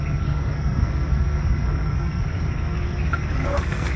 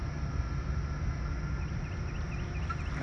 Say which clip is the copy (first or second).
first